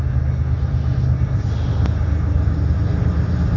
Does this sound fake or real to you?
real